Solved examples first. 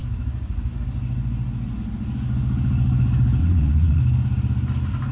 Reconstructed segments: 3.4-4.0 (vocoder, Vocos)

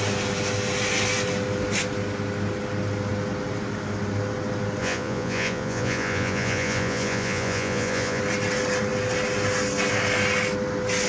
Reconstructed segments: 4.8-8.2 (vocoder, Vocos)